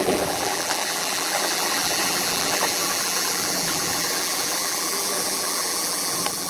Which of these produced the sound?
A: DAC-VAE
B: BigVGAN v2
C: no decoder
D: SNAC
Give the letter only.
B